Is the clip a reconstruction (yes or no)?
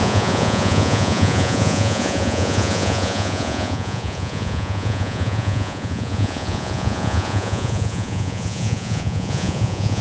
yes